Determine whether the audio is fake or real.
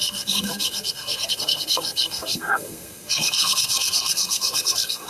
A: fake